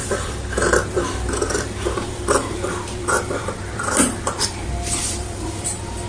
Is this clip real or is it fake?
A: fake